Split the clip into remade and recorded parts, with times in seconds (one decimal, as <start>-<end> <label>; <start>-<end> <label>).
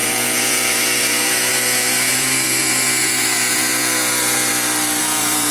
0.0-4.5 remade; 4.5-5.0 recorded; 5.0-5.5 remade